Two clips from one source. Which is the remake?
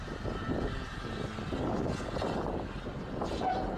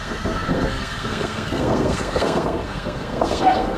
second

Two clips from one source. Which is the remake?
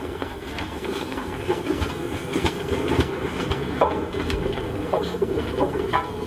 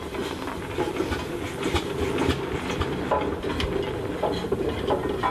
first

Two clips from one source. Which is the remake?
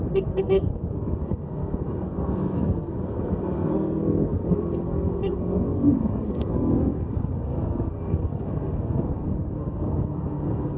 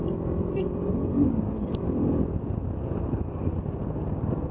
first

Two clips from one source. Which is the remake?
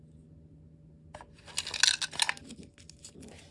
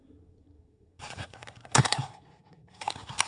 second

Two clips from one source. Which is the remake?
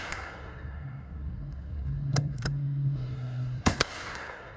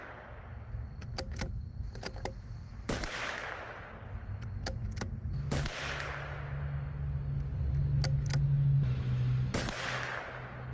first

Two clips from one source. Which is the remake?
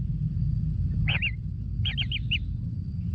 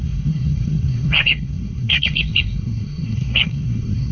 second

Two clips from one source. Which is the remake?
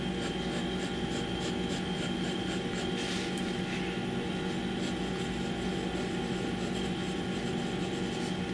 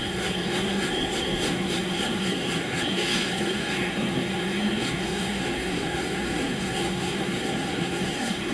second